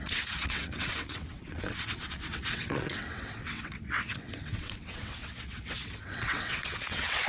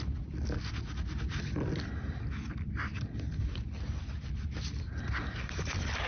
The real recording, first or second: second